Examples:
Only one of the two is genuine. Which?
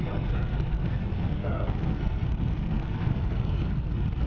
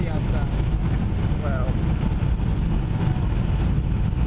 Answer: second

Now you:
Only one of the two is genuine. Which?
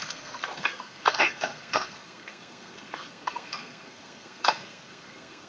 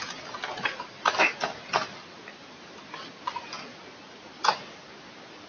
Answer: second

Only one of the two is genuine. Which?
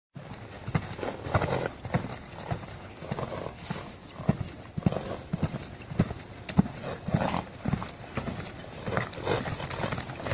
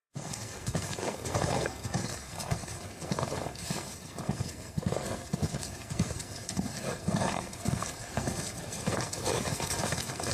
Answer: first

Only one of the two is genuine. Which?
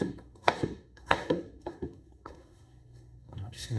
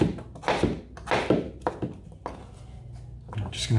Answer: second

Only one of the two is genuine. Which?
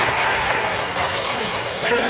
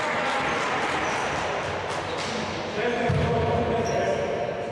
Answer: second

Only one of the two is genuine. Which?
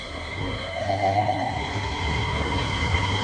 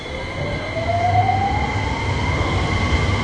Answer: second